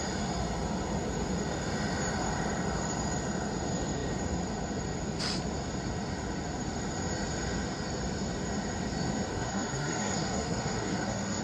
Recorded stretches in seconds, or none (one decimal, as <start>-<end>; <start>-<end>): 0.0-9.3